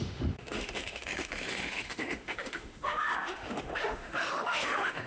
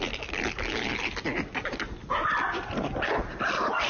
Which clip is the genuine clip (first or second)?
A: second